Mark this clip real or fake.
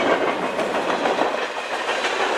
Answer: real